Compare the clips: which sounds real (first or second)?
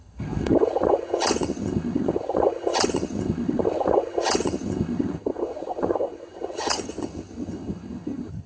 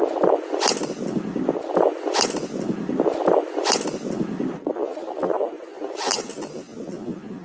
second